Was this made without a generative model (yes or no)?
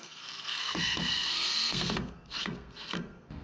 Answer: no